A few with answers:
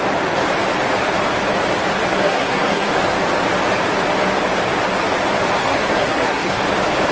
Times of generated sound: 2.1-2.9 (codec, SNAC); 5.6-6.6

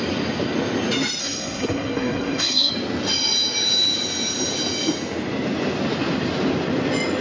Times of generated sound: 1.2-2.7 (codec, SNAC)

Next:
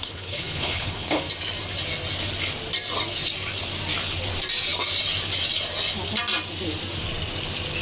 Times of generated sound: 0.0-1.2 (codec, HILCodec)